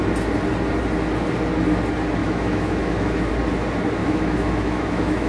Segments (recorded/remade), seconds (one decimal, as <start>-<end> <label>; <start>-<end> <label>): 0.0-2.2 recorded; 2.2-3.3 remade; 3.3-4.0 recorded; 4.0-5.3 remade